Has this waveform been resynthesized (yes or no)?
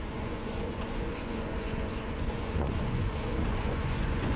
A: yes